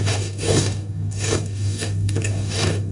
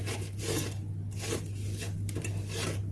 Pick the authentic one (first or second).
second